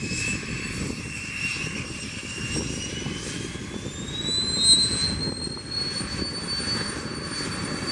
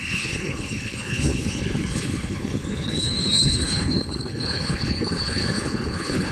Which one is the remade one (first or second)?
second